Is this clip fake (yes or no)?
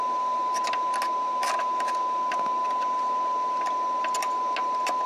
no